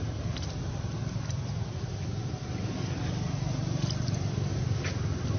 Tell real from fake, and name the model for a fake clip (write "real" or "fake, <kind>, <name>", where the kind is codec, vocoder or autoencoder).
real